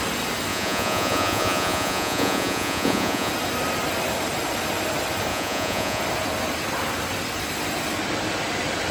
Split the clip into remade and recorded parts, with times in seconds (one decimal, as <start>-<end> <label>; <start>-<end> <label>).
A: 0.0-0.5 recorded; 0.5-3.3 remade; 3.3-5.3 recorded; 5.3-6.0 remade; 6.0-8.9 recorded